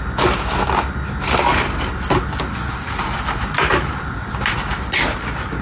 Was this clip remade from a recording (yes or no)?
no